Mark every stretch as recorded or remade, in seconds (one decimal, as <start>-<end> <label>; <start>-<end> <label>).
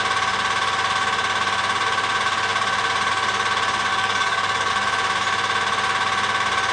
0.0-3.9 recorded; 3.9-4.7 remade; 4.7-6.7 recorded